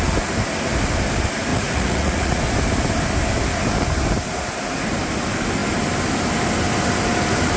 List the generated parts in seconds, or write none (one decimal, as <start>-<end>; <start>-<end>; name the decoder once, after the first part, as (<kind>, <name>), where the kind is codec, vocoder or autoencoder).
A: 1.5-2.4 (vocoder, Vocos)